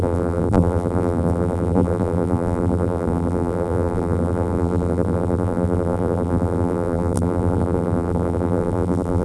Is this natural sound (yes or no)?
no